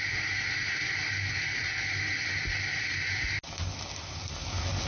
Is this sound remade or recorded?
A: recorded